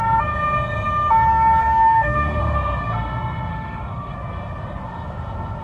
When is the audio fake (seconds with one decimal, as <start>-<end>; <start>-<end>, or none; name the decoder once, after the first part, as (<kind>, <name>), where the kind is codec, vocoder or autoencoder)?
1.6-2.4 (autoencoder, DAC-VAE); 3.5-4.1